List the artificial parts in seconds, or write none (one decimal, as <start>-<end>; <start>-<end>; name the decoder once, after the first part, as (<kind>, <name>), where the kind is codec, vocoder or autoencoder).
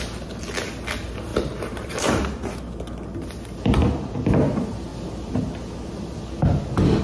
1.3-2.6 (vocoder, BigVGAN v2)